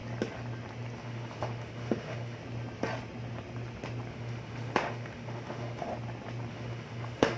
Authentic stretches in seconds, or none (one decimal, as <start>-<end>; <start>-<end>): 0.0-1.0; 2.4-4.1; 5.9-6.5